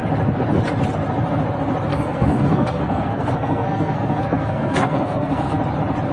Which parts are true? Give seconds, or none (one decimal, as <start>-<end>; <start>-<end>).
0.0-1.9; 5.6-6.1